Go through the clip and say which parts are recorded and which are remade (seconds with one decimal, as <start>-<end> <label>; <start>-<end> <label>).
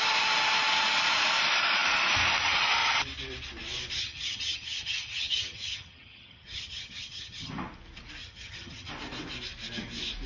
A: 0.0-4.0 recorded; 4.0-7.5 remade; 7.5-8.2 recorded; 8.2-8.9 remade; 8.9-10.3 recorded